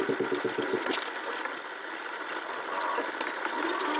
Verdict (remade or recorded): recorded